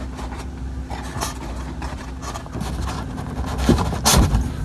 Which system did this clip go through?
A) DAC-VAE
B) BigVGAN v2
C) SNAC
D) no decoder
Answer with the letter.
D